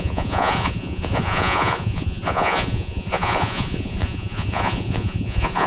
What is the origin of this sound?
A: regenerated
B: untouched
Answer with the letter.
A